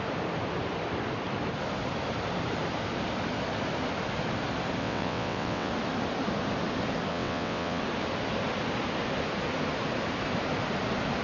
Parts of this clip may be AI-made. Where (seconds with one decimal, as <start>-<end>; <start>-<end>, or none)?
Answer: 4.8-5.7; 7.1-7.8